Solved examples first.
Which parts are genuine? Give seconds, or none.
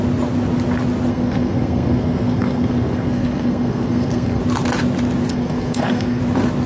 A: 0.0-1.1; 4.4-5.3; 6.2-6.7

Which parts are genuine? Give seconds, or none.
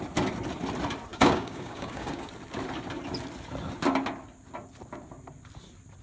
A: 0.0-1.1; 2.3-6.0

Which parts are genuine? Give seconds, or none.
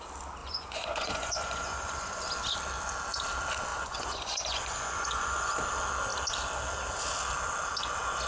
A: 0.0-0.4; 2.2-3.7; 5.5-8.3